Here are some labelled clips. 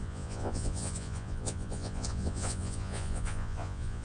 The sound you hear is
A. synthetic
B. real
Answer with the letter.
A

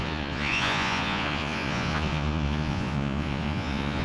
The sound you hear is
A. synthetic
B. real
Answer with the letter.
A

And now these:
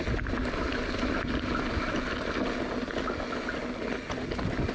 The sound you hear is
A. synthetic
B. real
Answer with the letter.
B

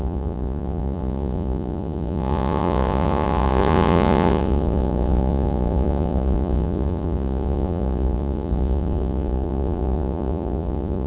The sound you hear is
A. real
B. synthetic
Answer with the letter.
B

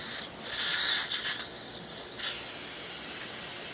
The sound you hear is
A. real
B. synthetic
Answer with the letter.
A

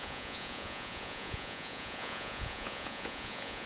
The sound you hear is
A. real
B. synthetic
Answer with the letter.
B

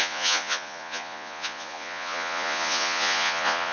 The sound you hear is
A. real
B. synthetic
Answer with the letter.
B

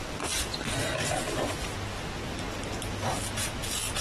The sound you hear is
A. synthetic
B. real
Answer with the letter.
B